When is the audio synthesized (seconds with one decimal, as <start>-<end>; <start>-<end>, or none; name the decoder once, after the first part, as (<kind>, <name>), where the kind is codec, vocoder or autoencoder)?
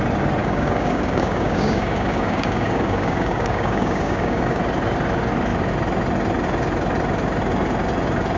0.4-4.6 (codec, DAC)